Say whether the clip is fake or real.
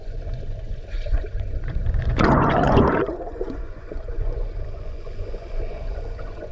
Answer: fake